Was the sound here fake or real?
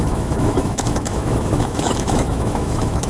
fake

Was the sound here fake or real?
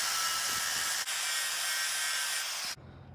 real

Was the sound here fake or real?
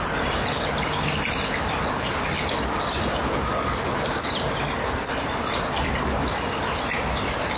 real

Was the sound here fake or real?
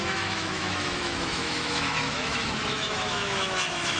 fake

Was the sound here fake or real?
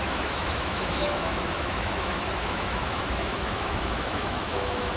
fake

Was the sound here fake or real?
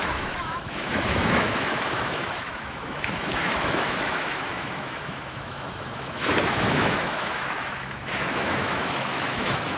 fake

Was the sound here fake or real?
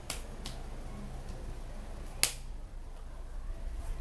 real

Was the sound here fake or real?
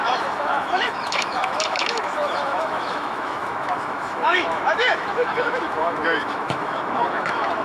fake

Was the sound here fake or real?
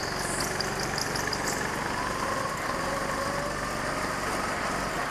real